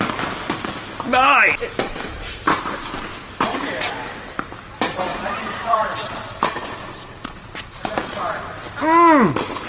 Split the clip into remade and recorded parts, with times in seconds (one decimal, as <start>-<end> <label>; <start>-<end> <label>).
0.0-5.1 recorded; 5.1-8.2 remade; 8.2-9.7 recorded